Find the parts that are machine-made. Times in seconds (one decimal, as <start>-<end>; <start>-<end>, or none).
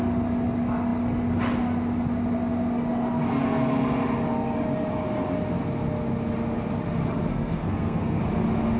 7.3-8.2